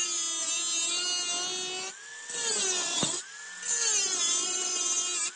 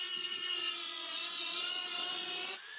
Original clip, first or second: first